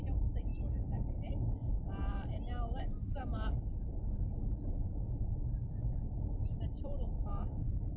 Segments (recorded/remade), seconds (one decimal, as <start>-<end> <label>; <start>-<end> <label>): 0.0-8.0 remade